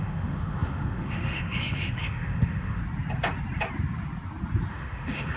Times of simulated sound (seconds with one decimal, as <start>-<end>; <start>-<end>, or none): 0.0-2.8; 4.7-5.4